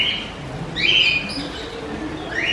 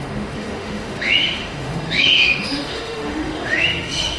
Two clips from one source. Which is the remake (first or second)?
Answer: second